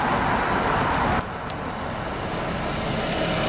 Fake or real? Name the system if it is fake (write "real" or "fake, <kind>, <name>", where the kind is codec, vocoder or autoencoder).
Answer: real